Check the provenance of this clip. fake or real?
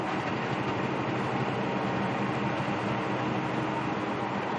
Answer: real